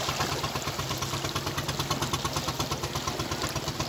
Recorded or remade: recorded